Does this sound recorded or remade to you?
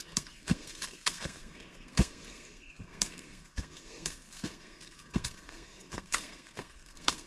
remade